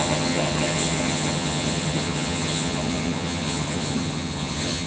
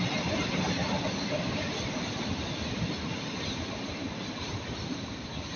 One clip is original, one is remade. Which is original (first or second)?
second